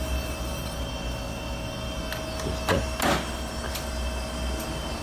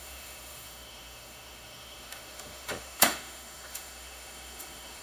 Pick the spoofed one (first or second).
second